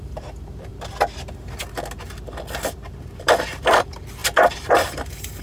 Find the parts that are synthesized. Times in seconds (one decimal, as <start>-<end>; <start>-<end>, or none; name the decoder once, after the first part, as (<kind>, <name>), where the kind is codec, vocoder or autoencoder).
0.0-0.7 (vocoder, BigVGAN v2); 3.2-5.4